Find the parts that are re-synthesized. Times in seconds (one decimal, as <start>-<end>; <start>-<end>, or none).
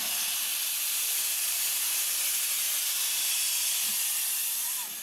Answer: 0.5-3.2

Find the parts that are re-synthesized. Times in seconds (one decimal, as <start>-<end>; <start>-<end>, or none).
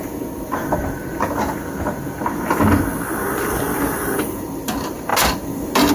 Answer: none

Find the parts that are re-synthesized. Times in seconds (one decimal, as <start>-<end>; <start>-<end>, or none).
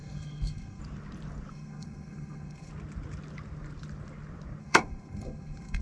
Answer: 0.0-0.8; 1.5-2.7; 4.6-5.8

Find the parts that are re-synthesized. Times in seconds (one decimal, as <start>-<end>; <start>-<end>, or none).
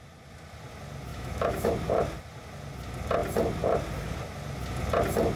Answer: 1.1-1.7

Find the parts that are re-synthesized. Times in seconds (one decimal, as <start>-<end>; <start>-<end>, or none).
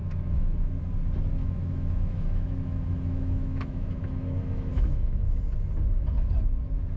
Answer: 0.0-0.8; 1.4-5.4